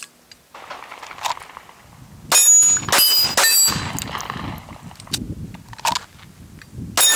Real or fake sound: real